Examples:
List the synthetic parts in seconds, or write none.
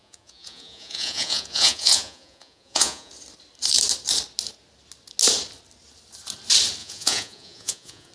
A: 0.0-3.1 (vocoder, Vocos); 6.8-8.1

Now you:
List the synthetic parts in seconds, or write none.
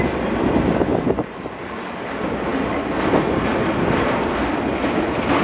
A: 0.9-1.8 (vocoder, BigVGAN v2)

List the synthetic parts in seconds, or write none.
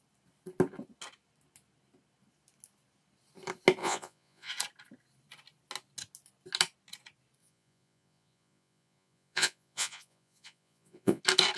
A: 3.8-4.5 (vocoder, Vocos); 7.4-11.2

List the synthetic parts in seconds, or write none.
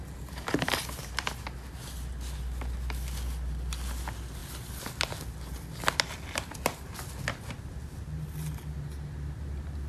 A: none